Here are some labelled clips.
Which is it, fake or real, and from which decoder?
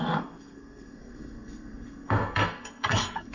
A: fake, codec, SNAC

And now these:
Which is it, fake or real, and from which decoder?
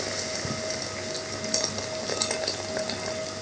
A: real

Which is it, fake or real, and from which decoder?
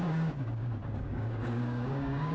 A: fake, codec, DAC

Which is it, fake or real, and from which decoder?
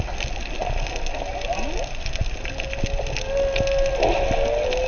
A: real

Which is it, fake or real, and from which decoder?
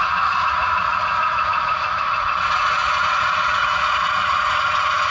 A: fake, vocoder, Vocos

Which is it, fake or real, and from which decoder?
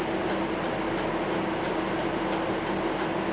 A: real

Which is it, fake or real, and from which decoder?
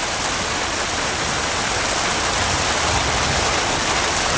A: real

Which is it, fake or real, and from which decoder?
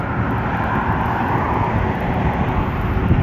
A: real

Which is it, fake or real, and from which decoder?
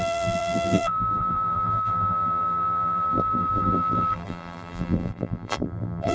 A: fake, vocoder, BigVGAN v2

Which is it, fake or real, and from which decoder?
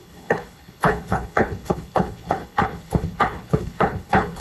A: fake, codec, HILCodec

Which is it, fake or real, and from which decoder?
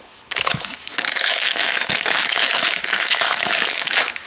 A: fake, autoencoder, DAC-VAE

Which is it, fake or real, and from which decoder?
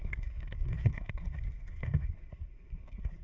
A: fake, codec, SNAC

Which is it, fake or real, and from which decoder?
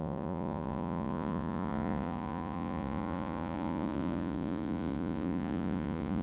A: fake, vocoder, Vocos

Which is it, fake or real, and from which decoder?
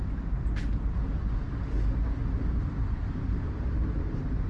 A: real